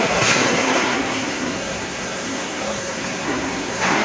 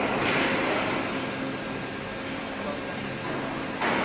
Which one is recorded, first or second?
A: second